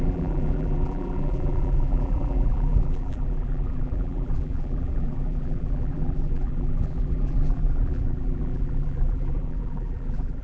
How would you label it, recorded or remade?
remade